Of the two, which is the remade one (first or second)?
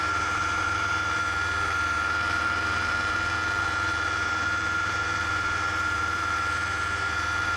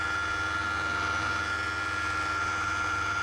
first